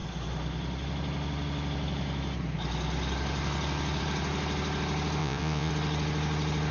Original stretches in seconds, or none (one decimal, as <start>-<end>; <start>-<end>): 0.0-5.2; 5.7-6.7